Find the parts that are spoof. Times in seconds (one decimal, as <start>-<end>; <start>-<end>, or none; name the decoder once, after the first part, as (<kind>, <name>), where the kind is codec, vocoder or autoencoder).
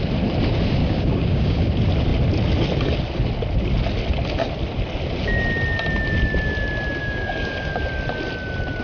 0.8-1.7 (codec, DAC); 7.0-7.7